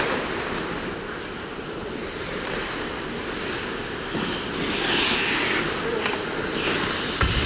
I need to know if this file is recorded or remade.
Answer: recorded